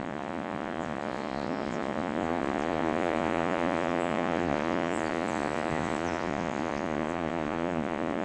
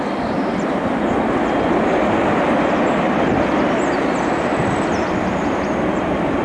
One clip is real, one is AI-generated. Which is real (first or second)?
second